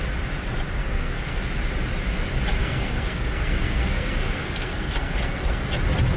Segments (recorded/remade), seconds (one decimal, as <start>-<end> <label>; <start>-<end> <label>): 0.0-0.8 recorded; 0.8-1.4 remade; 1.4-2.6 recorded; 2.6-5.6 remade; 5.6-6.2 recorded